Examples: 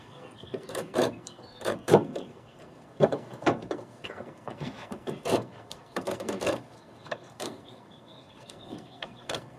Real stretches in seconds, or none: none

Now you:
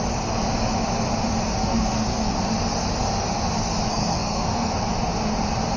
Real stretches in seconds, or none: 0.0-1.6; 2.3-3.9; 4.7-5.8

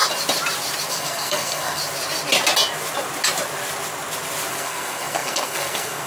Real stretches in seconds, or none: 0.0-0.9; 1.8-4.5

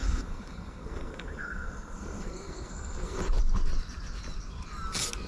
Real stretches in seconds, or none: 3.2-5.3